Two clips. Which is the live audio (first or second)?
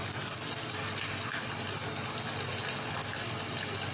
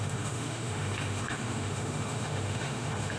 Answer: first